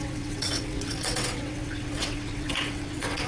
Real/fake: fake